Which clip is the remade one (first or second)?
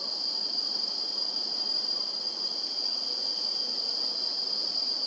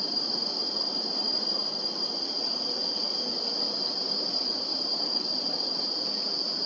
second